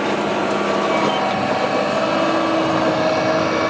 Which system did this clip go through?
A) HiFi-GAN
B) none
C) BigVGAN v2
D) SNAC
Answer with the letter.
B